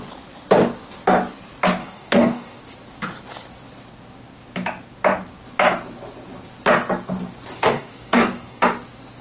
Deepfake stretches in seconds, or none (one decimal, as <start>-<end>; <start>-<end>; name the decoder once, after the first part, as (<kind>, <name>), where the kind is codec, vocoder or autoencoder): 1.8-2.6 (codec, DAC); 7.5-8.6